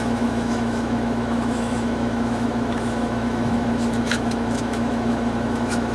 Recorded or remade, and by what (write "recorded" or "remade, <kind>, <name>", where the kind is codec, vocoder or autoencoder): remade, autoencoder, DAC-VAE